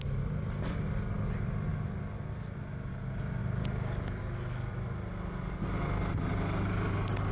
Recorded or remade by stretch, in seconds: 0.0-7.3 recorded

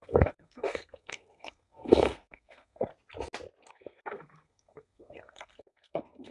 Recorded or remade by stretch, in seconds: 0.0-2.9 remade; 2.9-3.7 recorded; 3.7-6.3 remade

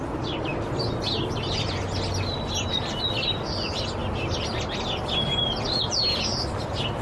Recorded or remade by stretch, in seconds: 0.0-7.0 recorded

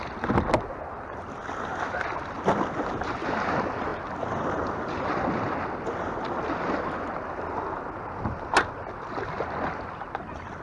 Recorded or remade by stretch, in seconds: 0.0-10.6 recorded

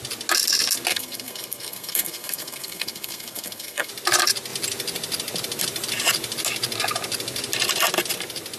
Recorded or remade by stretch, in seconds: 0.0-0.9 recorded; 0.9-3.9 remade; 3.9-8.6 recorded